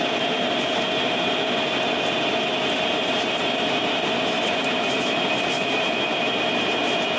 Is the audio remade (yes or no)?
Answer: yes